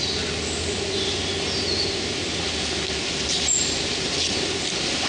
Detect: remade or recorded recorded